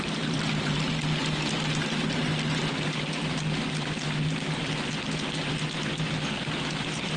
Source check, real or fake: real